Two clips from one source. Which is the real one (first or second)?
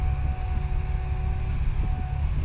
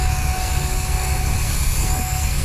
first